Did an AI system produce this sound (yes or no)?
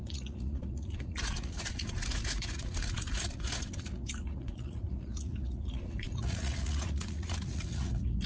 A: yes